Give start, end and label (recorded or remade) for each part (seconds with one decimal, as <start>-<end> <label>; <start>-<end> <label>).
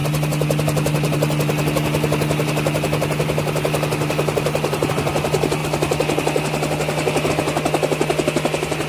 0.0-8.9 recorded